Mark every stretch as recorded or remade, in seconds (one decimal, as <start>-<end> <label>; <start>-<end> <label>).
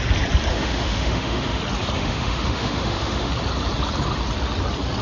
0.0-0.5 recorded; 0.5-1.6 remade; 1.6-2.0 recorded; 2.0-3.3 remade; 3.3-5.0 recorded